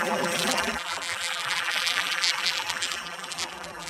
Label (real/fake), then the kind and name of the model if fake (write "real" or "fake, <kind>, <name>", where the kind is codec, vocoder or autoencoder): fake, vocoder, BigVGAN v2